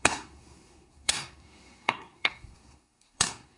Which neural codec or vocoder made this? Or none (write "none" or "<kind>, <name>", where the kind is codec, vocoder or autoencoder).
codec, SNAC